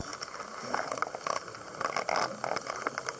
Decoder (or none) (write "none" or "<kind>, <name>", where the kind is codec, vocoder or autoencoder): none